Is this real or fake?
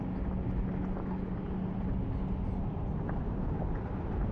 real